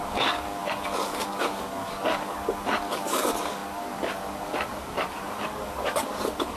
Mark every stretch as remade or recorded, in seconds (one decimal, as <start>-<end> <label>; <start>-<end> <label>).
0.0-6.6 remade